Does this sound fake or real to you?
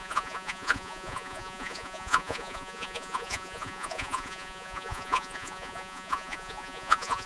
fake